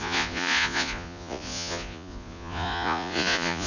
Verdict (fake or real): fake